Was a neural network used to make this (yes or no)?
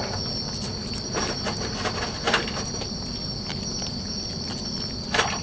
no